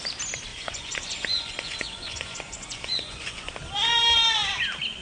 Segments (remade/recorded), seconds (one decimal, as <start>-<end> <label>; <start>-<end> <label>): 0.0-0.5 recorded; 0.5-3.5 remade; 3.5-5.0 recorded